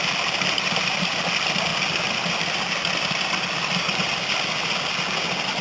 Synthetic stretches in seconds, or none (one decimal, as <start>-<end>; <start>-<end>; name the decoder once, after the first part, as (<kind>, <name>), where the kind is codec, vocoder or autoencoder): none